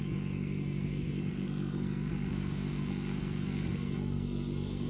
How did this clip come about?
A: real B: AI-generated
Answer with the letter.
B